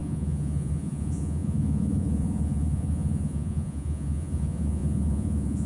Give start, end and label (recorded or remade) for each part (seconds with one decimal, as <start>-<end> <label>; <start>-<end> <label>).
0.0-5.7 remade